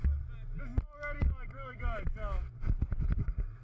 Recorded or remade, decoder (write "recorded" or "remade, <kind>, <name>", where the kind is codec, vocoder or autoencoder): recorded